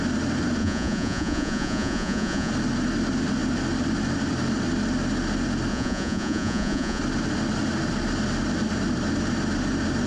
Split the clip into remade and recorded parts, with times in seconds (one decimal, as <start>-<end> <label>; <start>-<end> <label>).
0.0-0.6 recorded; 0.6-2.5 remade; 2.5-5.7 recorded; 5.7-7.0 remade; 7.0-10.1 recorded